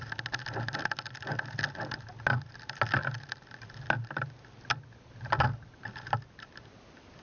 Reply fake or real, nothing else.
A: real